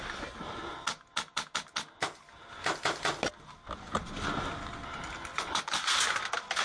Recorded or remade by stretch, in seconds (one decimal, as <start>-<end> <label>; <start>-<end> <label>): 0.0-5.3 recorded; 5.3-5.9 remade; 5.9-6.6 recorded